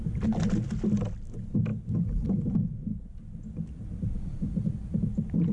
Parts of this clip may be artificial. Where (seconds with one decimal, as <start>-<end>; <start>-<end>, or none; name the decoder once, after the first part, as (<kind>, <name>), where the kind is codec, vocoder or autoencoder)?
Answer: 1.7-2.5 (vocoder, BigVGAN v2); 2.9-4.1